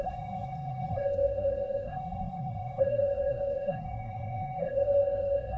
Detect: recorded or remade remade